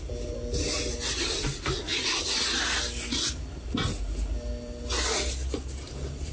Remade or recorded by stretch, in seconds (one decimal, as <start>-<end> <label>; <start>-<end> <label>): 0.0-6.3 recorded